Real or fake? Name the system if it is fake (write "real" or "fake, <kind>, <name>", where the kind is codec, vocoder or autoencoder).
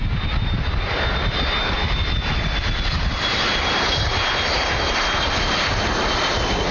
real